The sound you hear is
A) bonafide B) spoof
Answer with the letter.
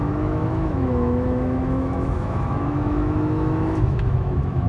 B